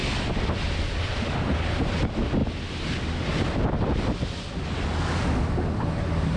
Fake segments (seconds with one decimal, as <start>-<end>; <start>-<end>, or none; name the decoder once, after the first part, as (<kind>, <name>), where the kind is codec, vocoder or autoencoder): none